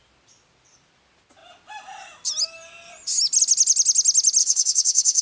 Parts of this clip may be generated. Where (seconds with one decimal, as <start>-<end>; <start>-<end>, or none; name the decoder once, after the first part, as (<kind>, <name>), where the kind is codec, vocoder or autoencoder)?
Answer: 4.4-5.2 (autoencoder, DAC-VAE)